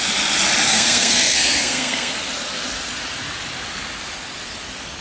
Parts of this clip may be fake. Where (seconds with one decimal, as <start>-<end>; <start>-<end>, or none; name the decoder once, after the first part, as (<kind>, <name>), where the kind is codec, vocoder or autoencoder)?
0.7-2.1 (codec, SNAC)